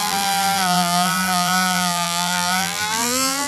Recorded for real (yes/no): no